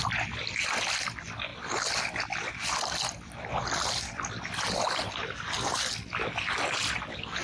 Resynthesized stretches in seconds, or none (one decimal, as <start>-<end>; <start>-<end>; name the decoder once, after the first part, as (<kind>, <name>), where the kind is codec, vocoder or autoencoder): none